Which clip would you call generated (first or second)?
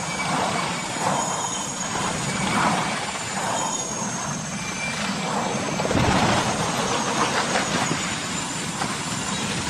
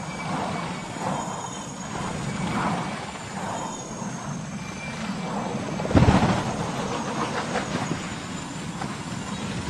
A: first